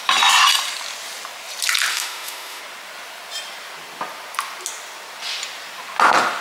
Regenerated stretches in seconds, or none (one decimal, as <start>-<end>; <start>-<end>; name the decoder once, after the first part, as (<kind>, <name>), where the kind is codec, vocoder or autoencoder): 1.9-2.6 (autoencoder, DAC-VAE)